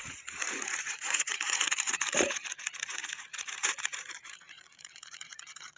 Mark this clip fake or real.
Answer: fake